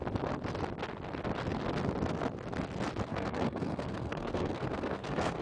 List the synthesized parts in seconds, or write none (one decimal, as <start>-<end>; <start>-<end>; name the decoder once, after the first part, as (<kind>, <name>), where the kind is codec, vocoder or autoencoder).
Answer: 3.1-5.4 (codec, SNAC)